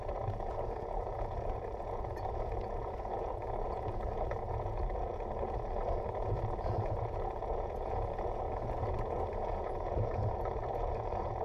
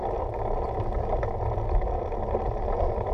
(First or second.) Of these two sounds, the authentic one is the second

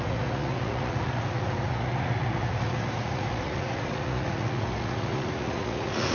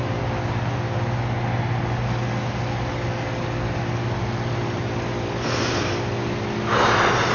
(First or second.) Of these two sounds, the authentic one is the second